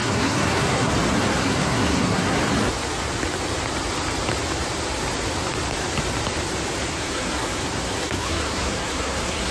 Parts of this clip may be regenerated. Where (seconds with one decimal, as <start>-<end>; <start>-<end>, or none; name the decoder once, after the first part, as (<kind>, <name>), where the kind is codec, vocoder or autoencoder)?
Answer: 0.0-0.9 (codec, SNAC); 1.4-2.4; 6.9-9.5